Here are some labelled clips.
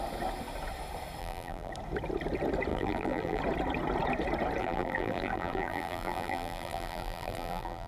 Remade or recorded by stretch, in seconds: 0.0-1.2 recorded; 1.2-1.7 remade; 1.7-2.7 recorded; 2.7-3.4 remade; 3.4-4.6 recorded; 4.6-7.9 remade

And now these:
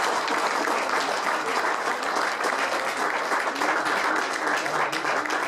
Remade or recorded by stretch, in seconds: 0.0-5.5 recorded

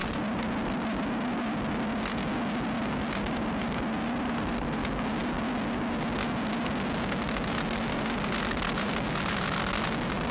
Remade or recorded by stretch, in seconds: 0.0-4.8 remade; 4.8-10.3 recorded